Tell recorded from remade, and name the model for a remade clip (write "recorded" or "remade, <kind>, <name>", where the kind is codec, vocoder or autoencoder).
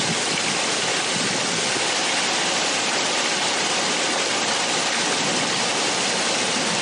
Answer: recorded